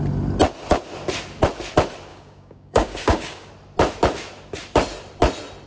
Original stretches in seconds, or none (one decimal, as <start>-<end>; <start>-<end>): 0.0-2.1; 3.5-5.7